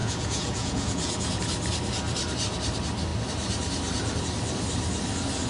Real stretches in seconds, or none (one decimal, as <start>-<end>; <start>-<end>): 1.4-5.5

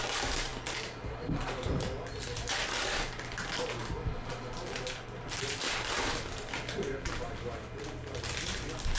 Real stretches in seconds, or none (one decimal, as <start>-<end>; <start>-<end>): 0.0-9.0

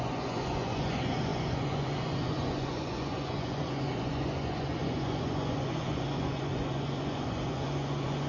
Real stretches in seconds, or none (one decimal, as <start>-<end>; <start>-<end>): none

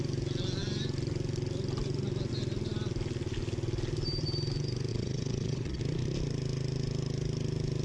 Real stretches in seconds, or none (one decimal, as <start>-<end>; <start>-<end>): 0.0-4.9; 5.8-7.8